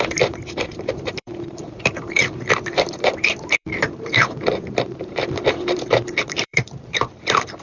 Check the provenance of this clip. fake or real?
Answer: fake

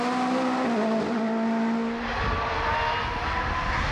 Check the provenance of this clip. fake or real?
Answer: real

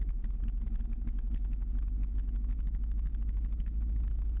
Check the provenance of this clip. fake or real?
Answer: real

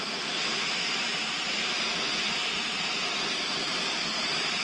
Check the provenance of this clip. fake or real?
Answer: fake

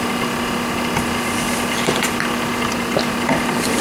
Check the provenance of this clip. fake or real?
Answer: real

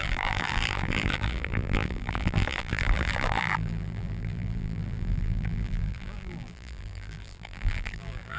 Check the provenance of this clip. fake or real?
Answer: fake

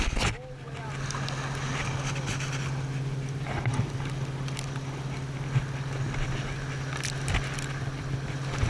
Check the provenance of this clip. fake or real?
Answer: real